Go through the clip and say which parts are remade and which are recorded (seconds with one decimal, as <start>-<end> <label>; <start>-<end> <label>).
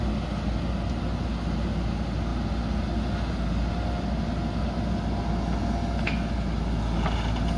0.0-7.6 recorded